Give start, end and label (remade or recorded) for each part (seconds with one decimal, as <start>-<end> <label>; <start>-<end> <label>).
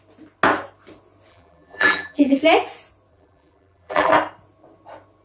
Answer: 0.0-1.3 recorded; 1.3-2.4 remade; 2.4-3.1 recorded; 3.1-4.1 remade; 4.1-5.2 recorded